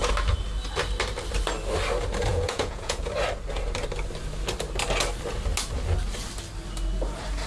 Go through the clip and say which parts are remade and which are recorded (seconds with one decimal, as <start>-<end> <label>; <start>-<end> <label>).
0.0-2.3 recorded; 2.3-3.1 remade; 3.1-7.5 recorded